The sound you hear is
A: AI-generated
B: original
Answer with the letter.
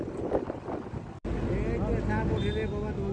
B